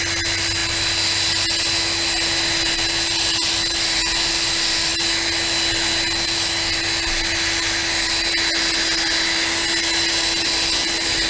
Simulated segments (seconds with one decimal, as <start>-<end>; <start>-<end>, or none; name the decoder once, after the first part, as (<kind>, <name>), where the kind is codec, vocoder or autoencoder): none